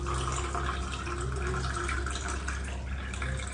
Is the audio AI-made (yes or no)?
no